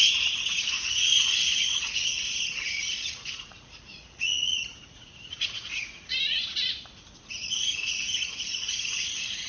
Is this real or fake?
fake